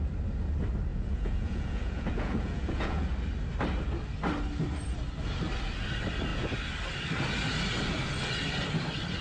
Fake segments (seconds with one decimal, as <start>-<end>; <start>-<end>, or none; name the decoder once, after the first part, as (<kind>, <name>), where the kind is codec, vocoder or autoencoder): 0.9-3.1 (vocoder, Vocos)

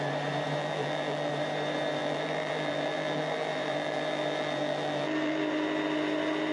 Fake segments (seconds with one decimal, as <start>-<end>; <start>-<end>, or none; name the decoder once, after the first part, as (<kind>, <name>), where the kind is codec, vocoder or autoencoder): 0.6-1.3 (vocoder, BigVGAN v2); 2.0-5.4

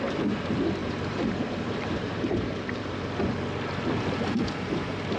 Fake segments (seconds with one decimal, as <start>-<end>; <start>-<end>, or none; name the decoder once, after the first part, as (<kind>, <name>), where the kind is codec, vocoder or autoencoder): 0.8-3.0 (vocoder, BigVGAN v2)

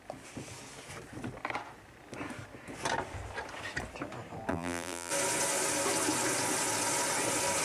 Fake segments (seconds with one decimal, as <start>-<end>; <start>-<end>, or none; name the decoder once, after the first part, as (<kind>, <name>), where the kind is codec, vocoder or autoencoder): 4.5-5.1 (vocoder, BigVGAN v2)

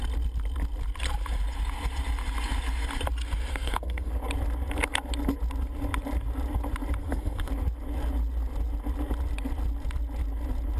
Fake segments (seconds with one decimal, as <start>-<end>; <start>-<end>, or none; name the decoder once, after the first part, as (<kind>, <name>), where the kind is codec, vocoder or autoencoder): 3.5-4.1 (codec, SNAC); 7.0-7.5